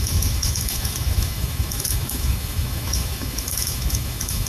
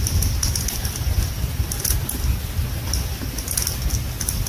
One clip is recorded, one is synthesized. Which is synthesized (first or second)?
first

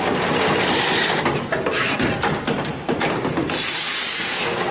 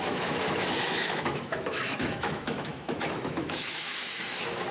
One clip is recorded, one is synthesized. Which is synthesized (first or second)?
second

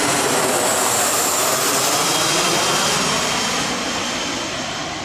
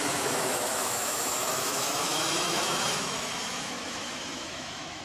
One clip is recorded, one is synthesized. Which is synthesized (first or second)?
second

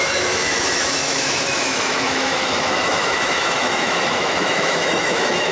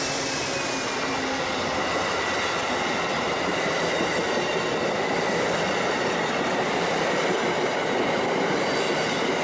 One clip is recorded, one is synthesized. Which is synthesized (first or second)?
first